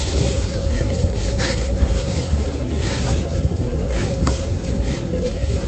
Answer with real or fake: fake